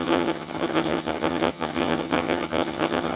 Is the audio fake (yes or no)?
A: yes